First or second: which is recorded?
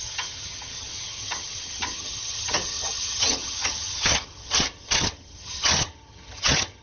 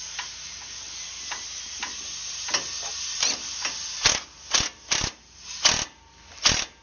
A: second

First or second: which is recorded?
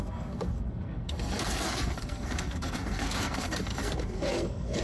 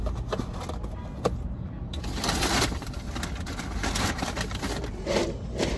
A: second